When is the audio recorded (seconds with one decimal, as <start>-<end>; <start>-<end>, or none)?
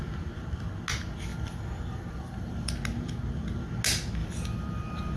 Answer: 0.0-1.3; 2.7-4.2